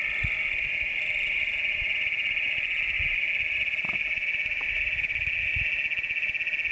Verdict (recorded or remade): recorded